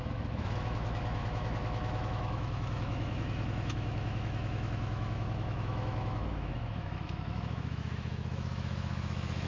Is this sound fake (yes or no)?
yes